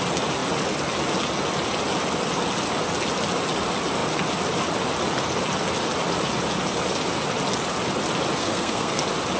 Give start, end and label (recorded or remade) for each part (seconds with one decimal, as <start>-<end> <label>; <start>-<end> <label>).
0.0-8.4 recorded; 8.4-9.0 remade; 9.0-9.4 recorded